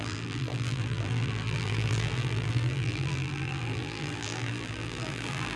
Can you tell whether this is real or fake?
fake